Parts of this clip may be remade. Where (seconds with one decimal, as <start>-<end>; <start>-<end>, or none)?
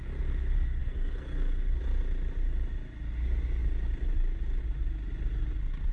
0.8-1.8